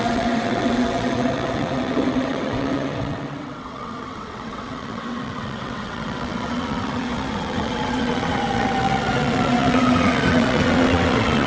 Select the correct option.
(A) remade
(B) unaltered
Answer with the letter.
A